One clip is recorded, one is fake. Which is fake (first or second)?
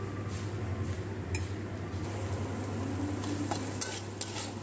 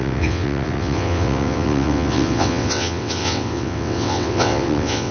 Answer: second